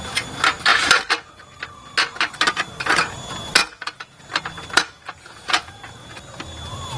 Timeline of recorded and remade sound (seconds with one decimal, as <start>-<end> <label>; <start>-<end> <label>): 0.0-3.6 recorded; 3.6-4.2 remade; 4.2-5.4 recorded; 5.4-6.2 remade; 6.2-7.0 recorded